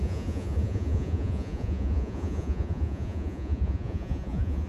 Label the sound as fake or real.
fake